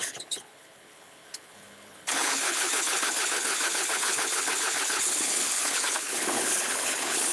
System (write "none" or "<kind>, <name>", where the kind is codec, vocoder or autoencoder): codec, HILCodec